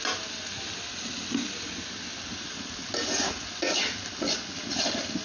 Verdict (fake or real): real